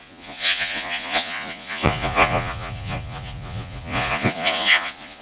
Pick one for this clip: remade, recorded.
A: remade